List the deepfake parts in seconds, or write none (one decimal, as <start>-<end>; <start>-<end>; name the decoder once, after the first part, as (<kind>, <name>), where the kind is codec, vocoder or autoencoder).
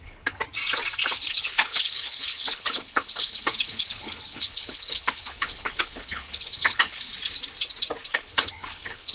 0.0-0.4 (codec, HILCodec); 1.1-7.1; 8.1-9.1